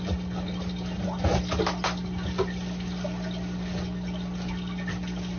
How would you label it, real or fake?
real